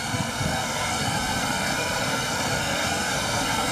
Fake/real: fake